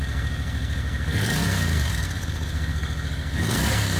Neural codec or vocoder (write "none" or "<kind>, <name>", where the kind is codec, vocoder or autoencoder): codec, SNAC